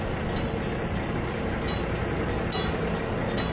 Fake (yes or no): no